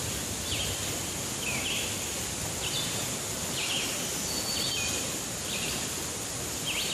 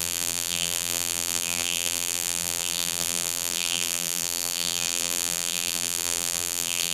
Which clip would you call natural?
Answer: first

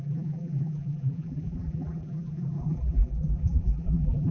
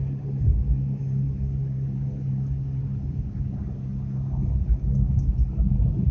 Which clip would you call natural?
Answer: second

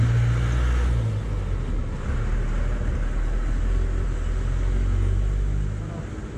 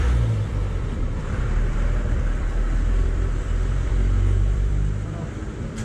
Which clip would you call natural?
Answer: first